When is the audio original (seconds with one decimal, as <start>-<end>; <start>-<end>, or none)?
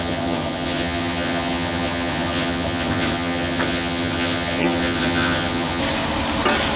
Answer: 5.8-6.8